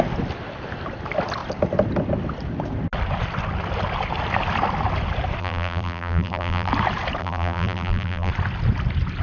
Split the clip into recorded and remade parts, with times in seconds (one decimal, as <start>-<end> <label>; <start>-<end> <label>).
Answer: 0.0-5.4 recorded; 5.4-6.7 remade; 6.7-7.2 recorded; 7.2-8.3 remade; 8.3-9.2 recorded